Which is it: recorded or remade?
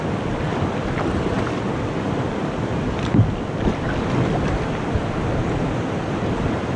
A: recorded